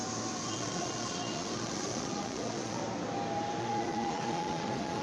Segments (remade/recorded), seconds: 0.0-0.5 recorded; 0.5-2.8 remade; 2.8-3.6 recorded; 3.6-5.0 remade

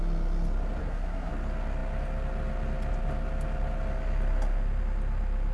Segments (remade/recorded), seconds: 0.0-0.8 recorded; 0.8-1.3 remade; 1.3-5.5 recorded